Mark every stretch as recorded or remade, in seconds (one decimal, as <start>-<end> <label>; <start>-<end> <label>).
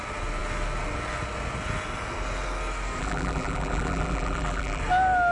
0.0-3.0 recorded; 3.0-4.8 remade; 4.8-5.3 recorded